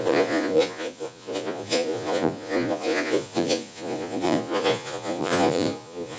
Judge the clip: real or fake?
fake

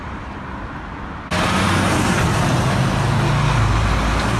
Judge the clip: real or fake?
real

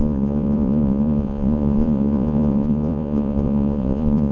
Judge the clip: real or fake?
fake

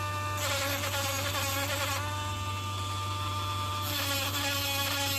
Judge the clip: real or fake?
real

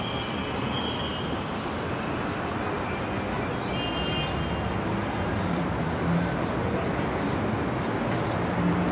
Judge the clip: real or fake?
real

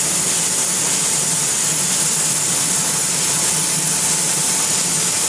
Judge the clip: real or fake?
real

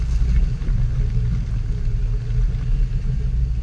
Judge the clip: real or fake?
real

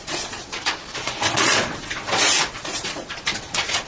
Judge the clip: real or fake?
fake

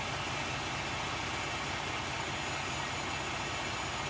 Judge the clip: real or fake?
real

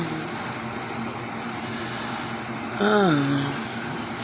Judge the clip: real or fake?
real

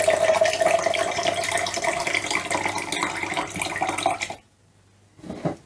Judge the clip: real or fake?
real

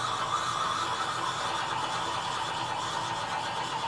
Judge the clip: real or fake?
real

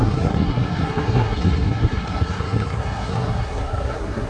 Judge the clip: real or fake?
fake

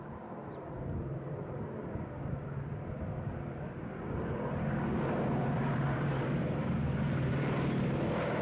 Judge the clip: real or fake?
fake